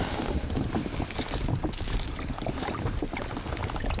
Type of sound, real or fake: real